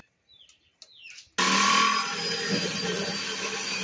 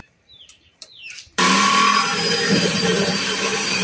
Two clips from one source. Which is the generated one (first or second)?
second